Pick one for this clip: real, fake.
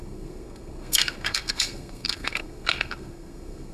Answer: fake